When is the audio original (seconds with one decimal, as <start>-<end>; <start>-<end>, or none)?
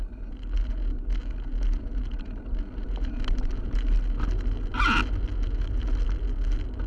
0.0-6.9